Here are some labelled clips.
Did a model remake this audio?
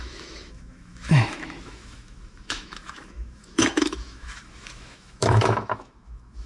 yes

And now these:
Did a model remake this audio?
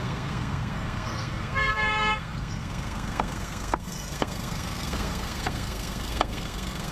yes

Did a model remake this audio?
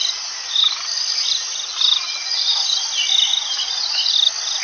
no